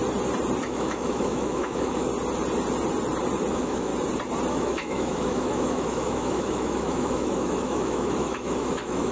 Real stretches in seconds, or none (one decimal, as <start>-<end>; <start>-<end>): 0.0-0.6; 2.1-3.5; 3.9-4.5